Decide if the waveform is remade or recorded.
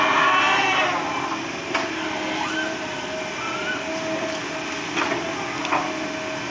recorded